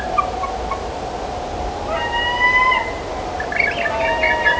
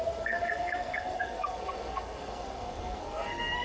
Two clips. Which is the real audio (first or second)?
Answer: first